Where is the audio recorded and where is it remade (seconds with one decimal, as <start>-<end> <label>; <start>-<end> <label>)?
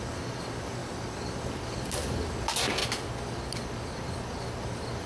0.0-5.1 recorded